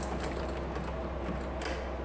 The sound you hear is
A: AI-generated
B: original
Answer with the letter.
B